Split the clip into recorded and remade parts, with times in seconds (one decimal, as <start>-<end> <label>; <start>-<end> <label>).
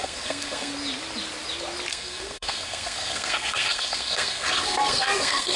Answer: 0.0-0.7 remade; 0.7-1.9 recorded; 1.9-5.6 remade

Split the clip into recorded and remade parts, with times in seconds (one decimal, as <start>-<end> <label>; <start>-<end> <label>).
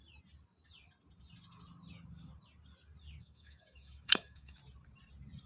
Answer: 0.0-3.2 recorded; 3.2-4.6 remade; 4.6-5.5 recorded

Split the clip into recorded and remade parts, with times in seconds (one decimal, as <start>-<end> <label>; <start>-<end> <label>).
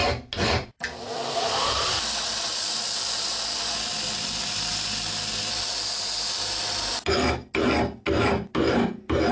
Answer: 0.0-9.3 recorded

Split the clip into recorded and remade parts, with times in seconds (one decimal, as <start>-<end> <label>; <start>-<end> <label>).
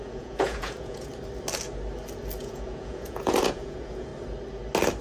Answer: 0.0-1.1 remade; 1.1-2.4 recorded; 2.4-4.1 remade; 4.1-5.0 recorded